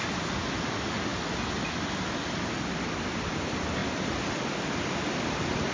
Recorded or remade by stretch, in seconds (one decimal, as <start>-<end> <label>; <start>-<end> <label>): 0.0-0.7 recorded; 0.7-1.1 remade; 1.1-3.1 recorded; 3.1-3.8 remade; 3.8-4.7 recorded; 4.7-5.7 remade